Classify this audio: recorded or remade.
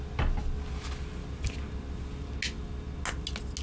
recorded